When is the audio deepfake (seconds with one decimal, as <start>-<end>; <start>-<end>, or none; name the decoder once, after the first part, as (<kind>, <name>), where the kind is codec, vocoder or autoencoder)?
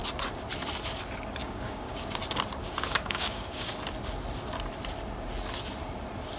1.4-2.2 (codec, DAC); 2.6-3.7